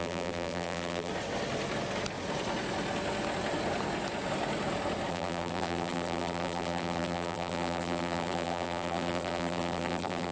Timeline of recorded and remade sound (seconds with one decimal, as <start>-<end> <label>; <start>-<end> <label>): 0.0-1.1 remade; 1.1-5.1 recorded; 5.1-10.3 remade

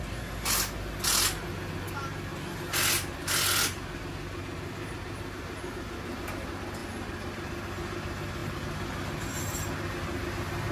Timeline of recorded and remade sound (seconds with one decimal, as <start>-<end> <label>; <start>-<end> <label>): 0.0-10.7 recorded

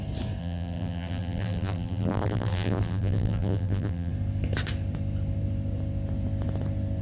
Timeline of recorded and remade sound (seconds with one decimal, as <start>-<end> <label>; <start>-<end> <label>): 0.0-0.4 recorded; 0.4-4.1 remade; 4.1-7.0 recorded